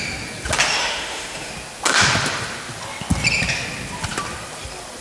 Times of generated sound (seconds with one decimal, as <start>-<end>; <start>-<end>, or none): 0.8-1.5